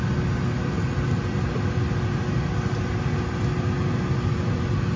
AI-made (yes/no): no